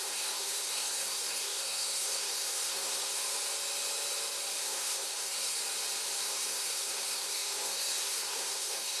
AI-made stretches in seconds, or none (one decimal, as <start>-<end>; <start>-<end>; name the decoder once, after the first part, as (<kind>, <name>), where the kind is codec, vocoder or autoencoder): 0.0-3.1 (codec, SNAC); 4.6-5.6; 6.2-9.0